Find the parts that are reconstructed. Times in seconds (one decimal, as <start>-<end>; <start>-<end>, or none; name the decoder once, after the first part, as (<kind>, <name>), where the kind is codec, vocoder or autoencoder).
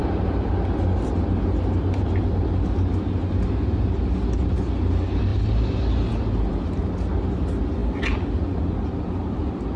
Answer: 0.0-0.5 (vocoder, BigVGAN v2)